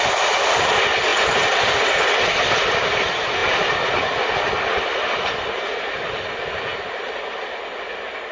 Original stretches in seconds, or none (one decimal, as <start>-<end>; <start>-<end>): 0.0-1.1; 1.8-8.3